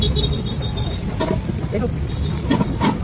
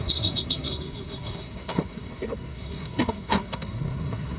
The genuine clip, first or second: first